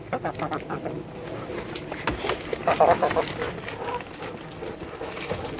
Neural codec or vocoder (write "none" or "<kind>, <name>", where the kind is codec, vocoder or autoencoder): none